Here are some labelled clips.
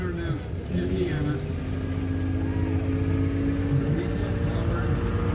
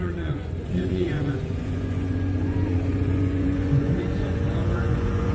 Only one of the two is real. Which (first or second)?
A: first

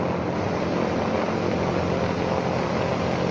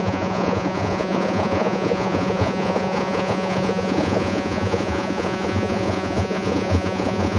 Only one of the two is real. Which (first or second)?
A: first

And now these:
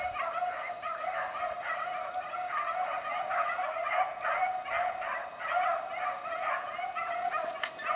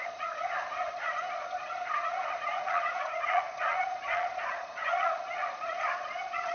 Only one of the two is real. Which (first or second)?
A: first